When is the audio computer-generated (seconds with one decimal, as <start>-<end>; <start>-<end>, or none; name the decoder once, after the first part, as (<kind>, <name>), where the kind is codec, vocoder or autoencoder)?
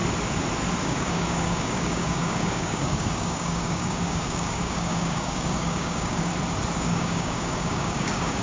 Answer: 0.8-6.3 (codec, DAC); 6.8-8.4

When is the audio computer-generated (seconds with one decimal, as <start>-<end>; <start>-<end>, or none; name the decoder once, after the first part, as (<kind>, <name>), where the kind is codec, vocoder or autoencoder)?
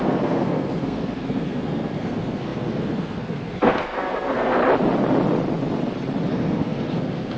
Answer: 0.0-4.6 (codec, SNAC); 6.3-7.4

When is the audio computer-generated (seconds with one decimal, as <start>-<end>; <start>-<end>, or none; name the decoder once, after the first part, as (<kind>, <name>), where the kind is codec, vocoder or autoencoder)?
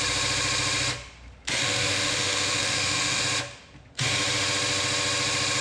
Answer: 1.6-3.2 (autoencoder, DAC-VAE)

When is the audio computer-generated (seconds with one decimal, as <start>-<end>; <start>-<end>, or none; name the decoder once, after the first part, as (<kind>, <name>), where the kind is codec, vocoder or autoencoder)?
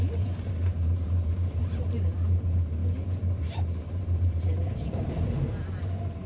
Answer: 0.0-2.8 (vocoder, BigVGAN v2); 3.4-6.3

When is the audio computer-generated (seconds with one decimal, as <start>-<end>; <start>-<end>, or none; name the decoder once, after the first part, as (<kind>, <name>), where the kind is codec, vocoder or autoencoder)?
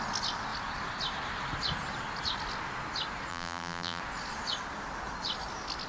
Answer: 3.3-4.0 (vocoder, BigVGAN v2)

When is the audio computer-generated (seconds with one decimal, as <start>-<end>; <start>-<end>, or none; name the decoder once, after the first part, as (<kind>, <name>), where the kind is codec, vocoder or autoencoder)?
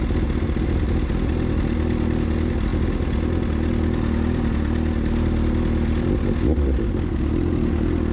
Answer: none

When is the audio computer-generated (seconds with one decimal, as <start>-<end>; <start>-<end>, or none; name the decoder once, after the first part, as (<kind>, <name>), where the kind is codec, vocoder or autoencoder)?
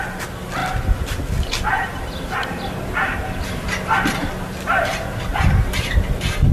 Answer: none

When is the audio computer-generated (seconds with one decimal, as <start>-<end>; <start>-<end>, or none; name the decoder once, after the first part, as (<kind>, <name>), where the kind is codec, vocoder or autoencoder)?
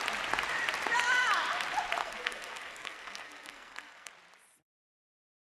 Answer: 2.0-4.1 (codec, SNAC)